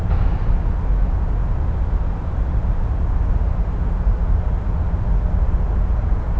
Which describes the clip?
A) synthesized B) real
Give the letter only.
B